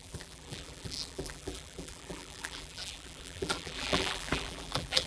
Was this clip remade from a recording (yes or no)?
yes